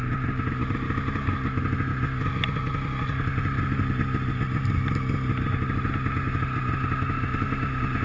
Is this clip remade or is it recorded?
recorded